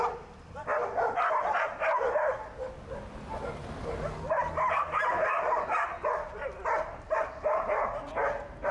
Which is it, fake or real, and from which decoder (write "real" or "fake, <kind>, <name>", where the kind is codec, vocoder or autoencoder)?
real